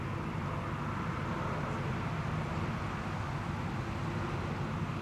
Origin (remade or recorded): recorded